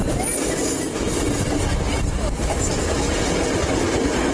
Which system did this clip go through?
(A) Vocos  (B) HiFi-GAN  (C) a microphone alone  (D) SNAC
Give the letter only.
C